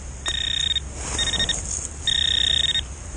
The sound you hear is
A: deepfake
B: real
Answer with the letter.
B